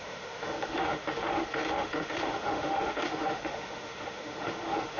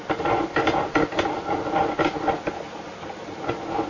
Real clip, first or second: second